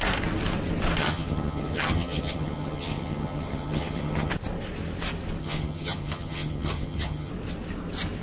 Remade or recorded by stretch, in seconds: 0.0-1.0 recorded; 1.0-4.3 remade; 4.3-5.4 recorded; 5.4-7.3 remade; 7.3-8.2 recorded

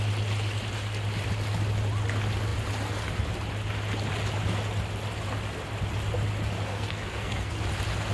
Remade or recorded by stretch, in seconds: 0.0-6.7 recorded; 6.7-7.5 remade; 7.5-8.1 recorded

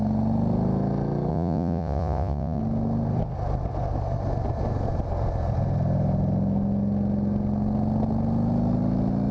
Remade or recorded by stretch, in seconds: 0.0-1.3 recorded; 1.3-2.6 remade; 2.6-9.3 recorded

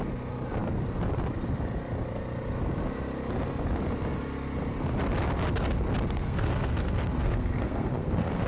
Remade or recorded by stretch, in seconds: 0.0-6.2 recorded; 6.2-8.5 remade

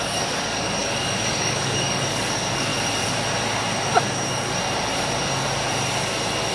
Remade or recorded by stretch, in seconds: 0.0-2.7 remade; 2.7-6.5 recorded

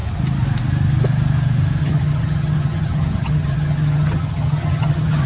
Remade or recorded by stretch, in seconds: 0.0-1.8 recorded; 1.8-5.3 remade

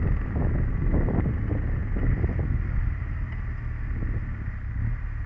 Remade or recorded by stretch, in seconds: 0.0-5.3 recorded

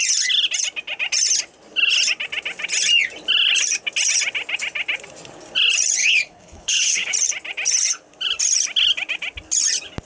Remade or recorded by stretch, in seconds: 0.0-6.0 recorded; 6.0-7.1 remade; 7.1-10.1 recorded